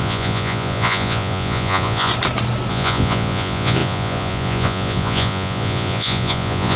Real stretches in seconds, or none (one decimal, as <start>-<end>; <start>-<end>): 2.1-2.7